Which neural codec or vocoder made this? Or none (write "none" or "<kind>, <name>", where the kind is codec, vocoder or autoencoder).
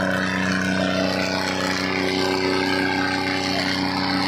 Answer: none